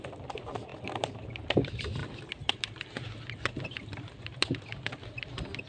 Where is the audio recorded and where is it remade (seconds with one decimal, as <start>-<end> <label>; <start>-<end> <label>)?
0.0-5.7 recorded